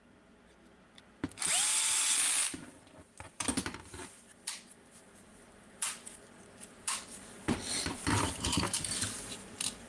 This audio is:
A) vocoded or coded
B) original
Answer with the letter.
A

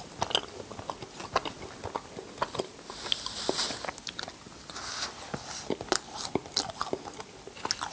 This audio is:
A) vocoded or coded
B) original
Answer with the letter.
B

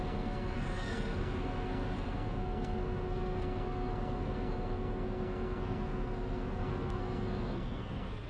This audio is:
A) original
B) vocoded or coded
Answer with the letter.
B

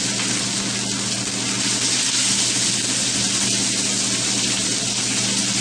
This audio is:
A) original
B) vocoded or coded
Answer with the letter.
A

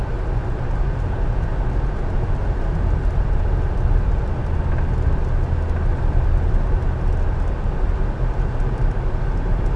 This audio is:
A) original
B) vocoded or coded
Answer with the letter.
A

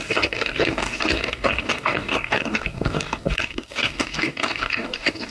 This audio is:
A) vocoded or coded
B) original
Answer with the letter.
A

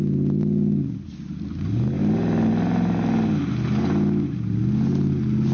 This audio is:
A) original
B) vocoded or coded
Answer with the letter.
A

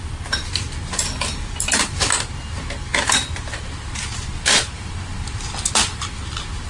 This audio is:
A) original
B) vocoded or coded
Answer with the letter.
A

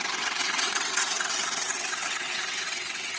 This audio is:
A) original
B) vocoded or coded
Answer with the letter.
B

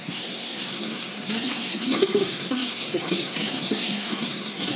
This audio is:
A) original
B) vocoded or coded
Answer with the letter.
B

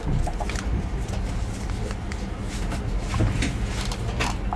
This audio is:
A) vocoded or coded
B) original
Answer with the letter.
B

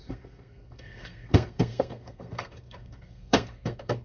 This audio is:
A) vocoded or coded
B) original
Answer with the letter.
A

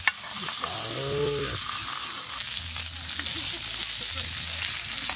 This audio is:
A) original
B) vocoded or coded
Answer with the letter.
A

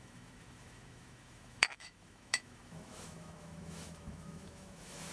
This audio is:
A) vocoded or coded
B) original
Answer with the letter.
A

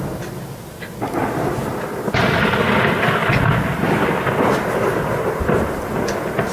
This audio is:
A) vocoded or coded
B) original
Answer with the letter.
B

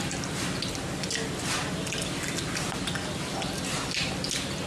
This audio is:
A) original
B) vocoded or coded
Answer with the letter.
A